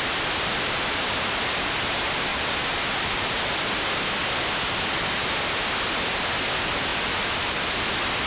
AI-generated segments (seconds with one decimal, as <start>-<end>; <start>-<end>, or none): 2.3-3.4; 6.9-7.9